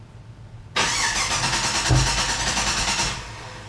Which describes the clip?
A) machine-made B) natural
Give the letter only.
B